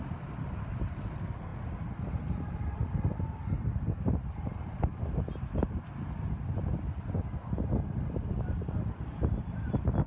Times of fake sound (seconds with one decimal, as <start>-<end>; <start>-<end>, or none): none